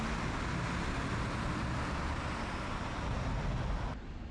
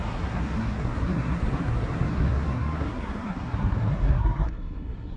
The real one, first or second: first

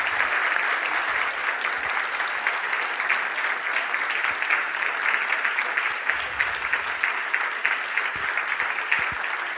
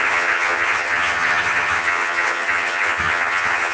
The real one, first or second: first